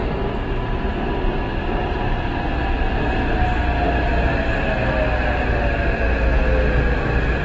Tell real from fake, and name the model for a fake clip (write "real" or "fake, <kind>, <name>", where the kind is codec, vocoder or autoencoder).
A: real